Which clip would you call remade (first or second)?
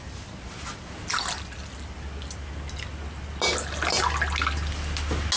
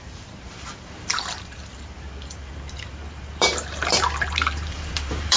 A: second